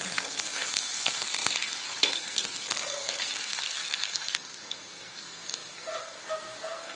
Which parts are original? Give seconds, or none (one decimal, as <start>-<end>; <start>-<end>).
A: none